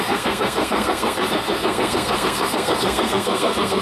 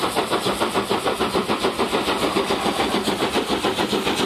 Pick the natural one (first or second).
second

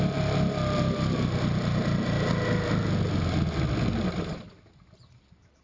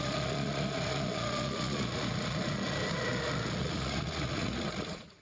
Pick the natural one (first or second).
first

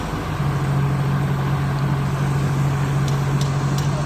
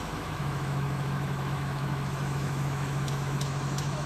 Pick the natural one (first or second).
first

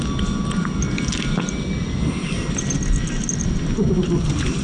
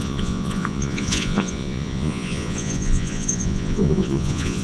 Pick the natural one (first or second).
first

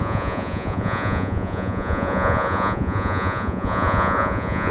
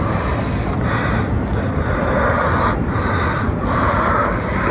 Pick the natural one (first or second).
second